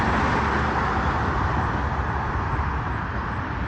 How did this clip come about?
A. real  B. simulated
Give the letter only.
A